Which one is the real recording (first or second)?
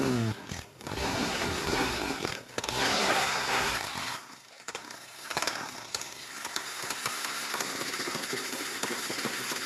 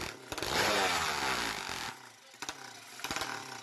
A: second